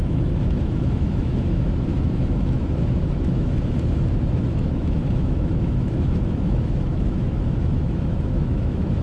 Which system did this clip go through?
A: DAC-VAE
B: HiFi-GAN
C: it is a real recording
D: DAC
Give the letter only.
A